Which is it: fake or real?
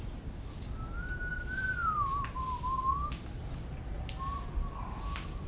real